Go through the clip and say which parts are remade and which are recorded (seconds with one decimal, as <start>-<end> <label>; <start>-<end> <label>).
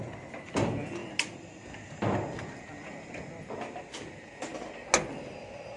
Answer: 0.0-5.8 recorded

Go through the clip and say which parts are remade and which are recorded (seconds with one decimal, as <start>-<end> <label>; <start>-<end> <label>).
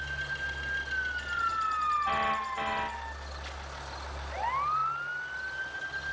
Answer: 0.0-6.1 recorded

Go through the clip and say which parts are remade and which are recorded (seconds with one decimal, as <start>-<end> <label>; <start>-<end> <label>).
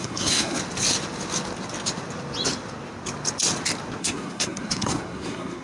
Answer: 0.0-0.6 remade; 0.6-4.0 recorded; 4.0-5.6 remade